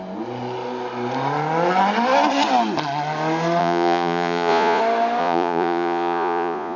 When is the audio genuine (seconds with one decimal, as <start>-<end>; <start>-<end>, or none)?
0.0-3.6; 4.8-5.2